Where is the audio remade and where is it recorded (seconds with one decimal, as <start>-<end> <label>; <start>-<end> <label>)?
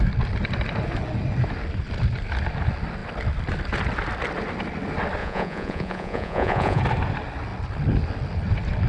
0.0-5.2 recorded; 5.2-6.8 remade; 6.8-8.9 recorded